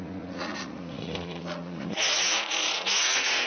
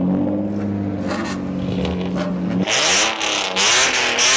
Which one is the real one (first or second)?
second